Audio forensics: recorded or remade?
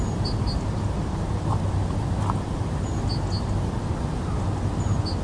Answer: recorded